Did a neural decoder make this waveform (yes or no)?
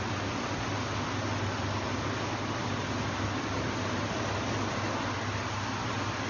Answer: no